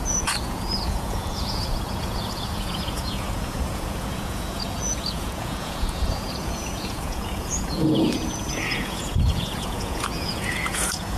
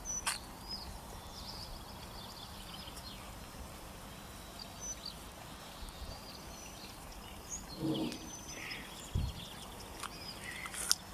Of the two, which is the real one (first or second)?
second